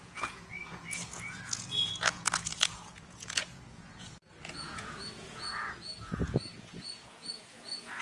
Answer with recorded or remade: remade